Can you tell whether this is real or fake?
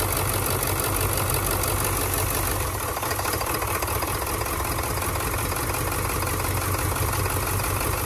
real